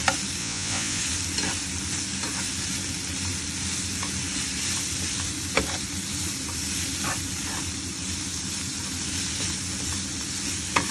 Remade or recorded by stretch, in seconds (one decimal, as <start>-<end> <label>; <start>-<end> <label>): 0.0-0.4 recorded; 0.4-1.0 remade; 1.0-10.9 recorded